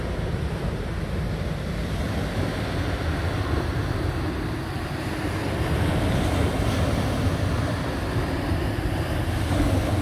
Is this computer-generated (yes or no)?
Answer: no